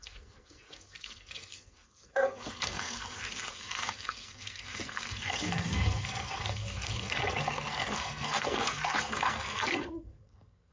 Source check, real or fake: fake